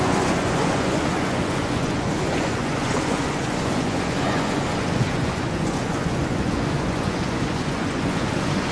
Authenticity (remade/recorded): remade